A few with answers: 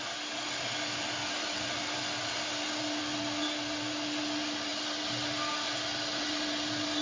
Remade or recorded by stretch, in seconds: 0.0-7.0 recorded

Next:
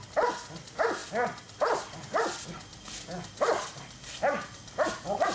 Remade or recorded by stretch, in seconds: 0.0-5.3 recorded

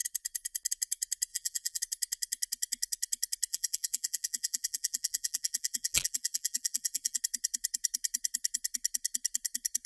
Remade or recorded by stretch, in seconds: 0.0-1.3 recorded; 1.3-1.8 remade; 1.8-3.5 recorded; 3.5-7.2 remade; 7.2-9.9 recorded

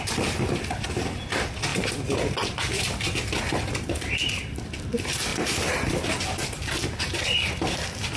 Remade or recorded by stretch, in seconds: 0.0-5.3 recorded; 5.3-6.1 remade; 6.1-8.2 recorded

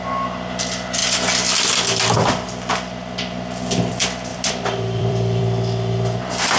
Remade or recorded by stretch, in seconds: 0.0-4.3 recorded; 4.3-5.4 remade; 5.4-6.6 recorded